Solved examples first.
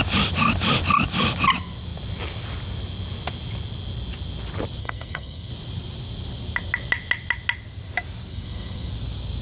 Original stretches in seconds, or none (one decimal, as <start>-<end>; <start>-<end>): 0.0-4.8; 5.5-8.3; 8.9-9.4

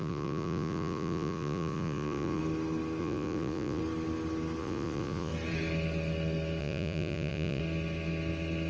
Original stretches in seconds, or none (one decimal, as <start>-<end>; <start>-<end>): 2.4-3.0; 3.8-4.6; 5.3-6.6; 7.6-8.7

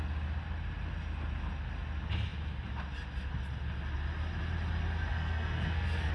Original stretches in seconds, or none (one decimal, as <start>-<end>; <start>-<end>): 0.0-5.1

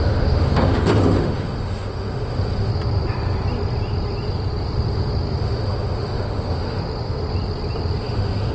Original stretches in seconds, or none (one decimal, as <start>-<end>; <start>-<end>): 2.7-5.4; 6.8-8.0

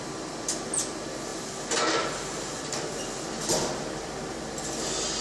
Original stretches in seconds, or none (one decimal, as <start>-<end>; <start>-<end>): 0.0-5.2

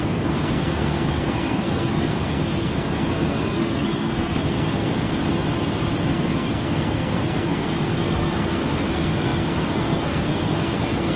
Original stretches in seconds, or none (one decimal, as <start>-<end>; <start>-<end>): 5.2-6.1

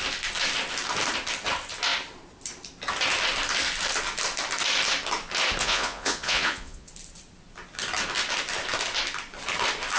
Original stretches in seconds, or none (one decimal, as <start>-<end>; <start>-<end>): 0.0-5.6; 6.9-10.0

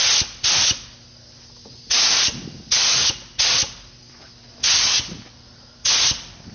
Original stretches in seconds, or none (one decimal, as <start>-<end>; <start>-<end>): 0.0-6.5